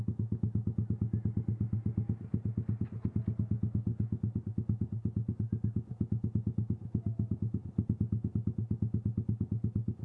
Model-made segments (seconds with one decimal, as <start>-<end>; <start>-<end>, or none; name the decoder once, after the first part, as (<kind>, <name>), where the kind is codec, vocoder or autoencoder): none